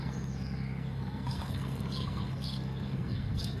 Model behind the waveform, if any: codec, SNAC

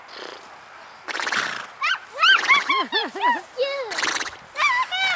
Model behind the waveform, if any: none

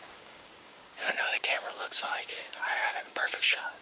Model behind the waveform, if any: codec, DAC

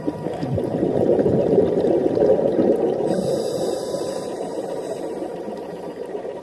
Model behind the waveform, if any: vocoder, BigVGAN v2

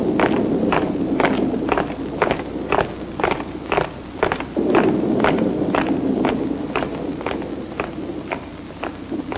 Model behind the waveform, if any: none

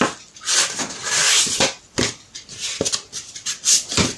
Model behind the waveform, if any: none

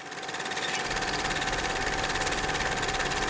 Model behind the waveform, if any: none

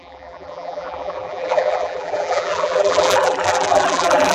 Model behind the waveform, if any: vocoder, BigVGAN v2